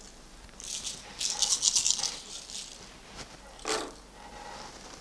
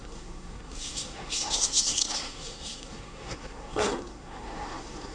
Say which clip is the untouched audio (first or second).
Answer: first